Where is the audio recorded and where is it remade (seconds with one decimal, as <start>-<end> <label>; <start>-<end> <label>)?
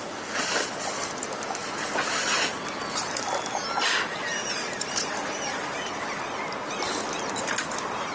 0.0-4.3 recorded; 4.3-5.9 remade; 5.9-8.1 recorded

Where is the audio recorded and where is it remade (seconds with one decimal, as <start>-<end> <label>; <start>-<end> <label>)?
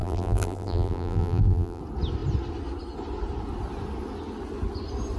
0.0-1.8 remade; 1.8-5.2 recorded